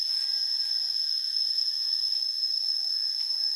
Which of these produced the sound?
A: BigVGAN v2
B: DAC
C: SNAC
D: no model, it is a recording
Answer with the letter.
D